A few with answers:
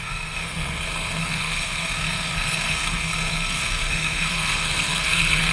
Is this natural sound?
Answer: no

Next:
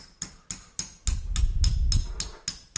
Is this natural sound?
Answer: yes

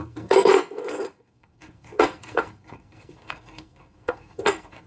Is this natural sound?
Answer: no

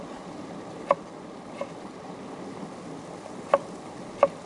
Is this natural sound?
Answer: yes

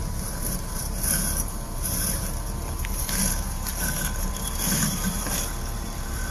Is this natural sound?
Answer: no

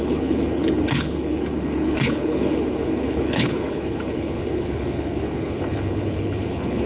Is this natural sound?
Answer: no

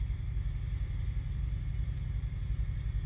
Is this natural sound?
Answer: yes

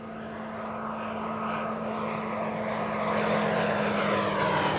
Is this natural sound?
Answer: yes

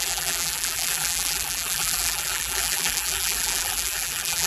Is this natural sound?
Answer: no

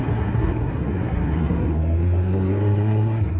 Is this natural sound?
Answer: no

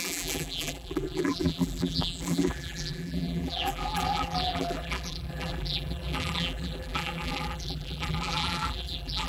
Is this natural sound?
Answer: no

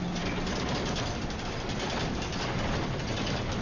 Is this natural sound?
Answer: yes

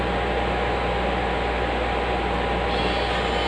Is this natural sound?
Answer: yes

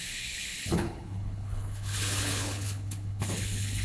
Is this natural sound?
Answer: no